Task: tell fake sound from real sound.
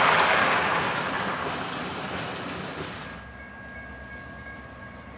real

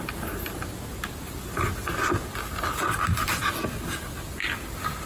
real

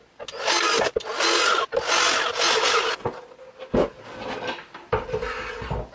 real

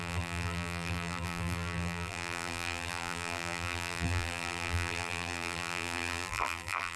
fake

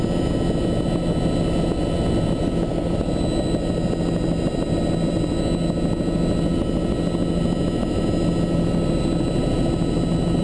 real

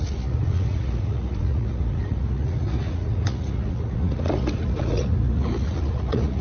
fake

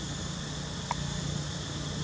real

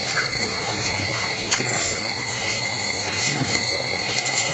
fake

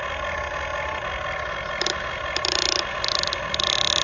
real